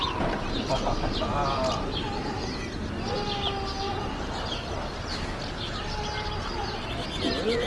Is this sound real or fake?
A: real